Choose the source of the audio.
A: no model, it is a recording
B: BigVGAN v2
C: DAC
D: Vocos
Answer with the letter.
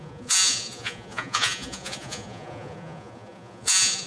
D